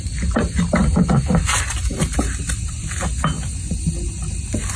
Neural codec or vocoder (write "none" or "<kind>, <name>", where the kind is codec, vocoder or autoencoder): none